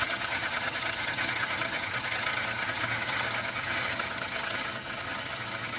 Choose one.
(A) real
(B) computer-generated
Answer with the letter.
B